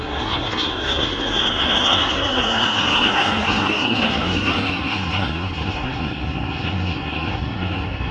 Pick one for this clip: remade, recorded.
remade